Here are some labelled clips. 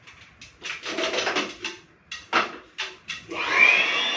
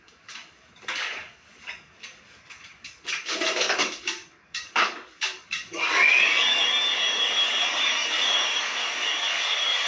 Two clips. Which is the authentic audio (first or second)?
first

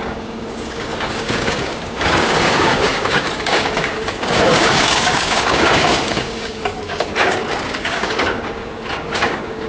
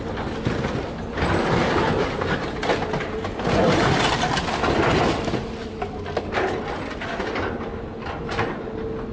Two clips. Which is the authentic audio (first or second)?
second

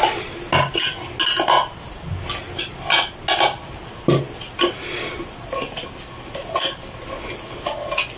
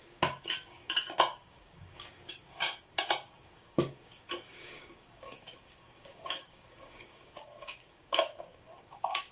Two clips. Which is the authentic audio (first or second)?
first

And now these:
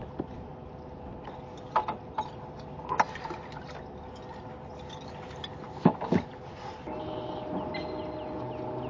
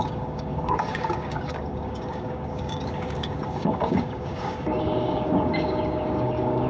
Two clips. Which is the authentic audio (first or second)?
first